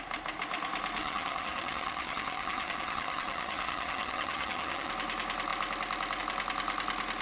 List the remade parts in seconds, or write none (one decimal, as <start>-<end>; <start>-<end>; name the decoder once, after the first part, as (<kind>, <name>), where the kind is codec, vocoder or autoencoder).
1.0-4.9 (vocoder, HiFi-GAN)

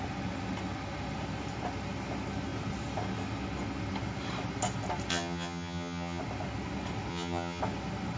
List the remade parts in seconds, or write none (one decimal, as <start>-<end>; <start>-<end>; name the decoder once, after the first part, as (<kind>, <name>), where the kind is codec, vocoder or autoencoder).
5.1-6.2 (vocoder, HiFi-GAN); 7.1-7.6

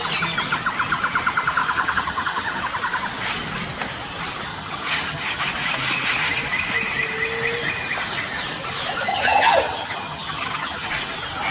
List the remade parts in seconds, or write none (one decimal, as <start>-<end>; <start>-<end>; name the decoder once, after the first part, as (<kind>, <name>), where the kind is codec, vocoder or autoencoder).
1.6-2.6 (vocoder, HiFi-GAN); 4.5-5.4; 9.1-10.9

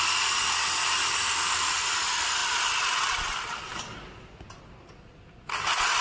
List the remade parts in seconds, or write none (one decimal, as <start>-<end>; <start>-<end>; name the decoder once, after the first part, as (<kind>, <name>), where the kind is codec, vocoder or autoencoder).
none

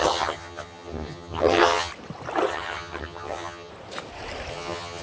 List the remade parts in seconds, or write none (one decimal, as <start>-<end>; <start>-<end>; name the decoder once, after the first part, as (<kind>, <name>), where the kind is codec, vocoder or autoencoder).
0.0-1.9 (vocoder, HiFi-GAN); 2.5-3.7; 4.5-5.0

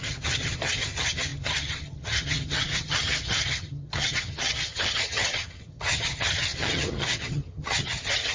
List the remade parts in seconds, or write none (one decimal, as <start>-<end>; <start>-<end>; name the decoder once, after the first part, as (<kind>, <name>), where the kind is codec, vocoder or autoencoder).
0.0-8.3 (vocoder, HiFi-GAN)